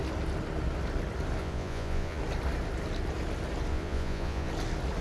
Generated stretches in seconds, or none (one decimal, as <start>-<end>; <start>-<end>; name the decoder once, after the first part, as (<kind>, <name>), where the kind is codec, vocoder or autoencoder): 1.4-2.2 (vocoder, Vocos); 3.7-4.5